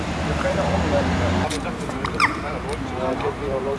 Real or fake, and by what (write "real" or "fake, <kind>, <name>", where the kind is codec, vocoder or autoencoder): fake, vocoder, BigVGAN v2